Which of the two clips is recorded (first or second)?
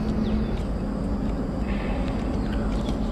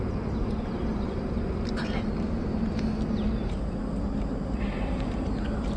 first